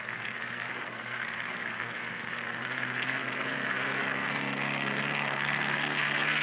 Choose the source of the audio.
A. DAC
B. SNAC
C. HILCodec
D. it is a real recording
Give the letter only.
B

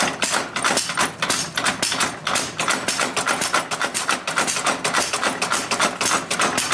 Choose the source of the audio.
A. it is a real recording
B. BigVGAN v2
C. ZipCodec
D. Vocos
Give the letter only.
A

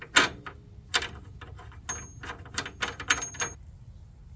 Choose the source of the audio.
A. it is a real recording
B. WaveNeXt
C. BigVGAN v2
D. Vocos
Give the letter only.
A